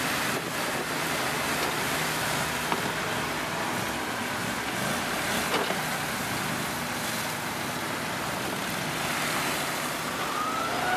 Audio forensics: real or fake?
real